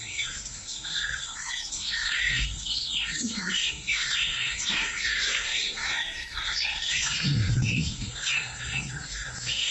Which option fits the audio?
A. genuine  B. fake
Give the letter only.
B